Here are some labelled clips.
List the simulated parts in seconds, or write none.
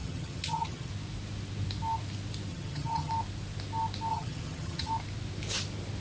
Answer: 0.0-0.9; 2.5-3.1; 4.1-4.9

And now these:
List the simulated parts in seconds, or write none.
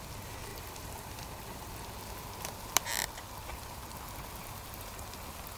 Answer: 0.5-1.7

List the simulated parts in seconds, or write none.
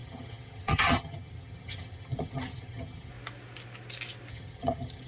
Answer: 0.0-3.1; 4.3-5.1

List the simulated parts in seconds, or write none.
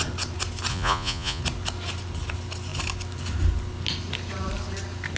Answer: 0.7-1.4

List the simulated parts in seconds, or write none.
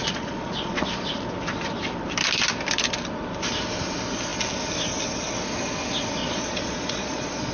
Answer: 0.0-1.1; 6.2-7.5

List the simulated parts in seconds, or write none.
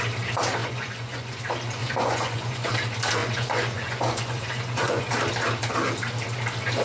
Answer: 0.6-1.4; 1.8-2.7; 3.2-5.1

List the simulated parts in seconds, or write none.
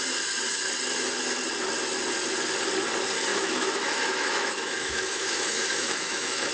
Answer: 3.3-6.5